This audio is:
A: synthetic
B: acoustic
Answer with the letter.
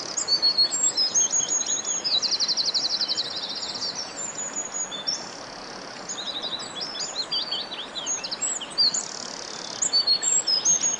B